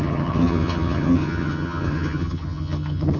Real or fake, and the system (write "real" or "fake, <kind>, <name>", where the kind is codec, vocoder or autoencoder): fake, vocoder, HiFi-GAN